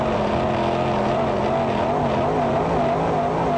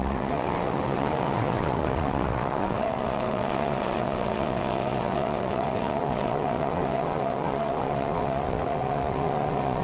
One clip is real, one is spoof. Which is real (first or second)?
first